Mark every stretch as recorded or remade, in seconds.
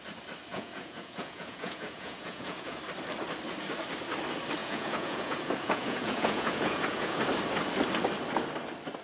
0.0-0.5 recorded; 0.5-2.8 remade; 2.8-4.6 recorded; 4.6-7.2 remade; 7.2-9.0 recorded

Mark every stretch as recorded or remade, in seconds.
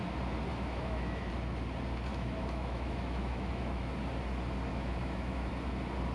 0.0-0.5 recorded; 0.5-1.3 remade; 1.3-2.1 recorded; 2.1-3.9 remade; 3.9-4.7 recorded; 4.7-5.5 remade; 5.5-6.1 recorded